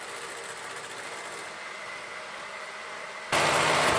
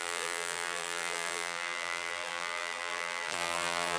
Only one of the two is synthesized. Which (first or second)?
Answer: second